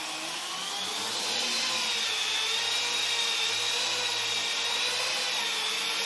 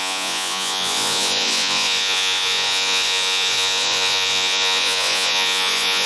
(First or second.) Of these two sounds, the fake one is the second